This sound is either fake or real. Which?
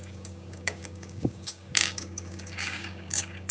fake